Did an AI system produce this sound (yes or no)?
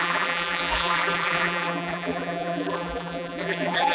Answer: yes